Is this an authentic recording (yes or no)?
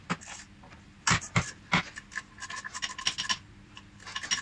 yes